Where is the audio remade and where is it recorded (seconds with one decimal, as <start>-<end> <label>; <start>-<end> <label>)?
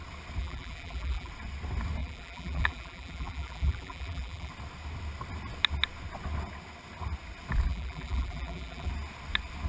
0.0-0.4 recorded; 0.4-1.3 remade; 1.3-2.0 recorded; 2.0-4.5 remade; 4.5-7.7 recorded; 7.7-8.9 remade; 8.9-9.7 recorded